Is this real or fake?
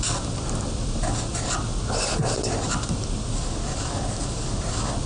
real